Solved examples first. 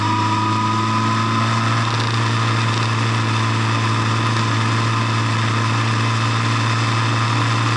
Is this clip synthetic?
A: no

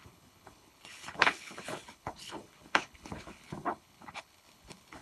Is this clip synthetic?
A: yes